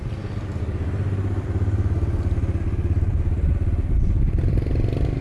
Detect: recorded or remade recorded